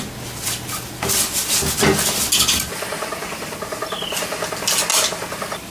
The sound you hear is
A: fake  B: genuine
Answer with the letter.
B